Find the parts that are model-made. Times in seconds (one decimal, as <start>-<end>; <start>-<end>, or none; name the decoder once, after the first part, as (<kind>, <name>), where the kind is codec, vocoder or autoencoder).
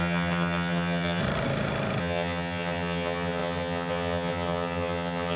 0.0-1.2 (vocoder, HiFi-GAN); 2.0-5.4